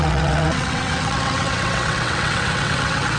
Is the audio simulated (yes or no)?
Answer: yes